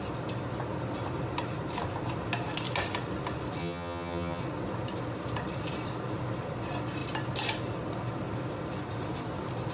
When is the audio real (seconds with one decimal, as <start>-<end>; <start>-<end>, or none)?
0.0-3.6; 4.4-9.7